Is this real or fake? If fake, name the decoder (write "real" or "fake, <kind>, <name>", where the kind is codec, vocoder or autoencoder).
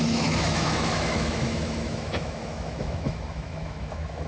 fake, autoencoder, DAC-VAE